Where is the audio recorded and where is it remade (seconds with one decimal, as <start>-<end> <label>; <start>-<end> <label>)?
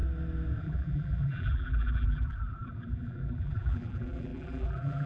0.0-0.6 recorded; 0.6-5.1 remade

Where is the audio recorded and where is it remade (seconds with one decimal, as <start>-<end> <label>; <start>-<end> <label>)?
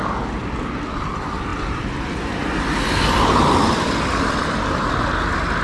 0.0-0.4 recorded; 0.4-1.1 remade; 1.1-1.5 recorded; 1.5-4.9 remade; 4.9-5.6 recorded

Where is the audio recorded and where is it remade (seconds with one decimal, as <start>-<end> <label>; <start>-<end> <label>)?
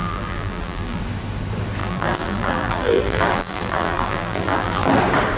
0.0-1.0 remade; 1.0-1.8 recorded; 1.8-5.0 remade; 5.0-5.4 recorded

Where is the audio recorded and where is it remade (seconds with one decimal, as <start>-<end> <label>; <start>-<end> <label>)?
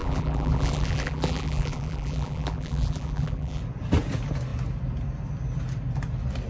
0.0-3.6 remade; 3.6-6.5 recorded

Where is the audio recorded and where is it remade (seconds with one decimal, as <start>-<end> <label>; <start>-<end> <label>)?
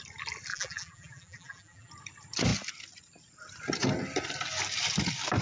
0.0-0.5 recorded; 0.5-1.9 remade; 1.9-5.4 recorded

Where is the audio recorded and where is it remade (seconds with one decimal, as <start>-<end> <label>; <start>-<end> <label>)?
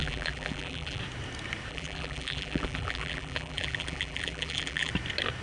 0.0-1.0 remade; 1.0-1.7 recorded; 1.7-4.9 remade; 4.9-5.4 recorded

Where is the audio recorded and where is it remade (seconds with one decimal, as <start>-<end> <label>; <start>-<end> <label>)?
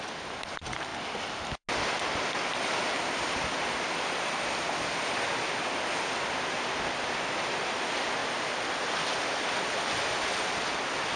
0.0-11.2 recorded